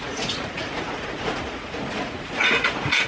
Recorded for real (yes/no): no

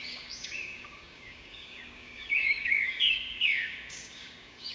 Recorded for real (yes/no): no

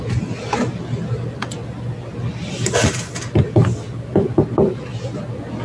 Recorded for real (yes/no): yes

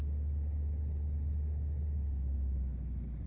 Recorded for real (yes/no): yes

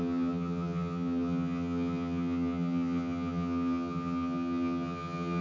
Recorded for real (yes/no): no